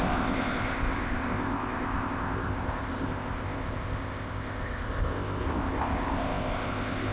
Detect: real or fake fake